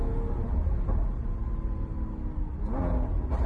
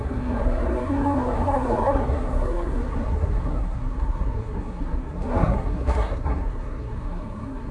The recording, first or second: first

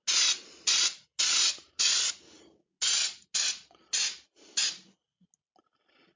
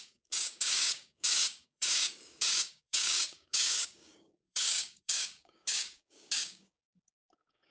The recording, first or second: first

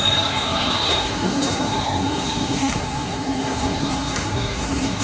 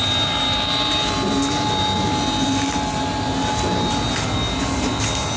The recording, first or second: second